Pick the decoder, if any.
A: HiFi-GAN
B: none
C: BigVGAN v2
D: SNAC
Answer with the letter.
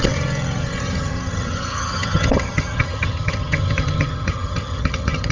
A